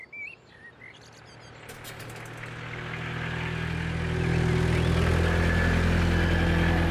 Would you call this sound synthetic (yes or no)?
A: no